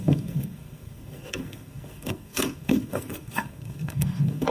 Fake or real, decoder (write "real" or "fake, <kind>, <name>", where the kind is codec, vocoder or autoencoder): fake, codec, SNAC